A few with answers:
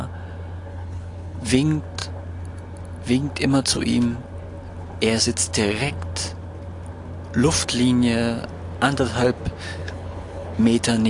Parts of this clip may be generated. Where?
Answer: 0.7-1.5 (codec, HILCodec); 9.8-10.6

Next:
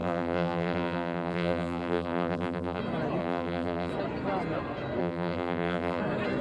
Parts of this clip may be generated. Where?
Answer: 0.0-2.8 (vocoder, BigVGAN v2); 3.2-3.9; 5.0-6.0

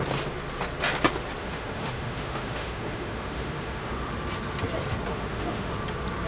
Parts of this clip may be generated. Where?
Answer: 1.4-4.1 (autoencoder, DAC-VAE); 5.1-5.7

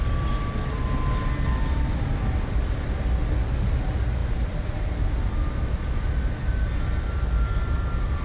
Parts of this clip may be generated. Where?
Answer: none

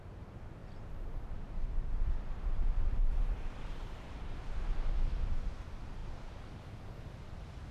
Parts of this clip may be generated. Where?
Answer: 0.6-4.2 (vocoder, BigVGAN v2)

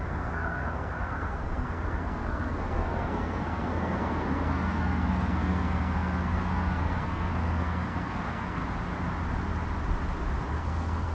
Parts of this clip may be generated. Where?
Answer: 0.0-8.6 (codec, SNAC); 10.5-11.1